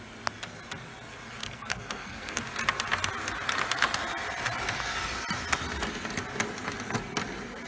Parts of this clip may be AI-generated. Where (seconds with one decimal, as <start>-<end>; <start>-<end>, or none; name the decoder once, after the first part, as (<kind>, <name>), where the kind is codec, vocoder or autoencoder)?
1.4-2.4 (codec, SNAC)